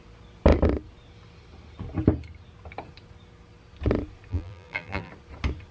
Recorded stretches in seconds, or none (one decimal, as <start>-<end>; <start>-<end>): 0.0-4.3; 5.1-5.7